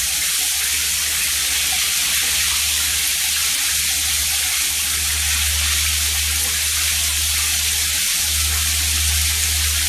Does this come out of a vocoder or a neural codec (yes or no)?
no